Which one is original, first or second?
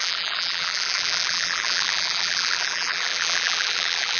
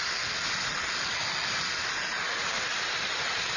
second